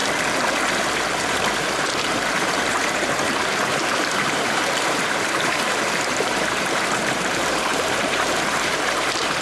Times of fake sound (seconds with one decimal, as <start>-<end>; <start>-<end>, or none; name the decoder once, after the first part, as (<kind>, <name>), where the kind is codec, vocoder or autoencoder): 1.2-9.4 (vocoder, BigVGAN v2)